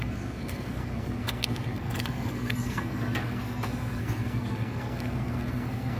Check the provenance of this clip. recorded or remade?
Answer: remade